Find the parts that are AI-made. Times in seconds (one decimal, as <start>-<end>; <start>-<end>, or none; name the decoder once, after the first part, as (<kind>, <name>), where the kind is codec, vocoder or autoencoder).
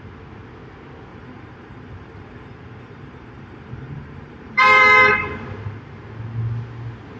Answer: 1.1-5.4 (vocoder, BigVGAN v2)